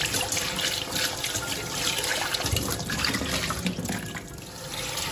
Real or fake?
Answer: real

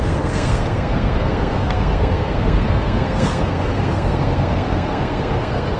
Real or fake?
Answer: fake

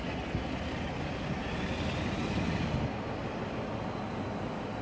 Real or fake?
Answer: real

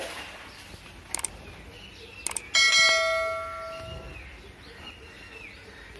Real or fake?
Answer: real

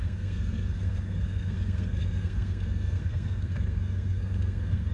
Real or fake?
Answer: fake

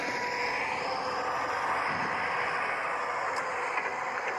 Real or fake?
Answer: real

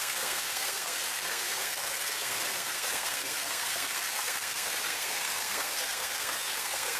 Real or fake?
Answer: fake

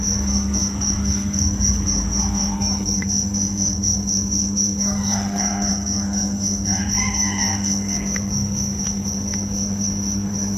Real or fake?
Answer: fake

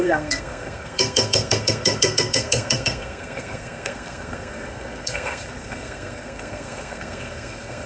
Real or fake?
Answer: fake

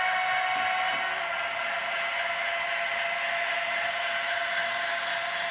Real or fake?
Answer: real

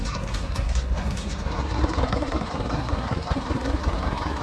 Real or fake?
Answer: fake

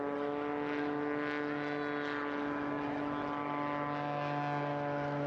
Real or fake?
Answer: real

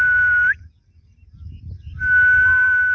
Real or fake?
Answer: real